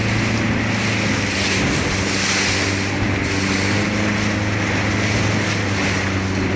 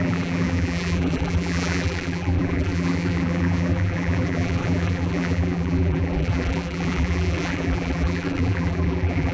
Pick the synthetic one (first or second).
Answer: second